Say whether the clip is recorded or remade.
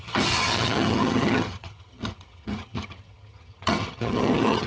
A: remade